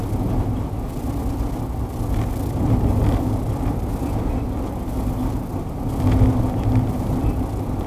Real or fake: real